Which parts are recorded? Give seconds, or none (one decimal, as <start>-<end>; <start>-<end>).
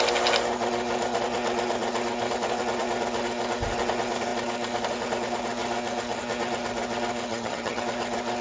0.0-7.3; 7.8-8.4